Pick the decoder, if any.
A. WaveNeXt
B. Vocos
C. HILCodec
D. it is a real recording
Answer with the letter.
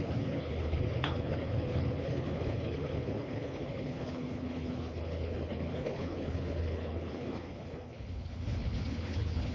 C